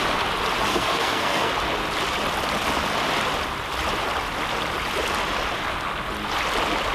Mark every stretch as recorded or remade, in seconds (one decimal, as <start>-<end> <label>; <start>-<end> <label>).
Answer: 0.0-0.7 recorded; 0.7-1.5 remade; 1.5-6.9 recorded